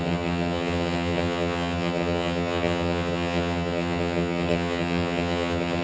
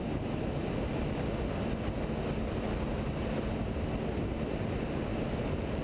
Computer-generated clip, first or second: first